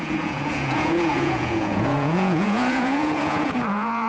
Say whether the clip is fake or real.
fake